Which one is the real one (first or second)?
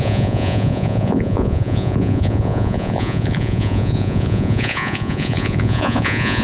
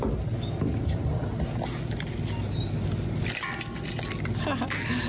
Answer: second